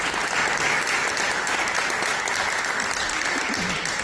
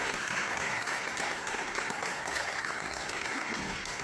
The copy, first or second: second